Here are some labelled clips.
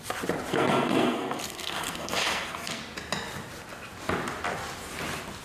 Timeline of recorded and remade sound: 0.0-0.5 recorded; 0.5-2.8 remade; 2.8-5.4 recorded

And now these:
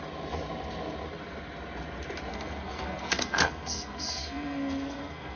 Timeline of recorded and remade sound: 0.0-2.3 recorded; 2.3-5.4 remade